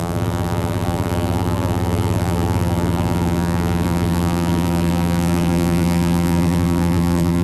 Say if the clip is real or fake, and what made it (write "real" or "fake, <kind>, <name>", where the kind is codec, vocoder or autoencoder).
fake, vocoder, BigVGAN v2